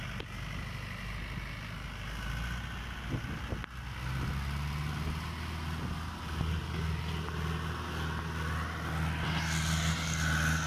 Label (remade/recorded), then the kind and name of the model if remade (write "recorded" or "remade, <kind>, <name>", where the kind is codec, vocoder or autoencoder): recorded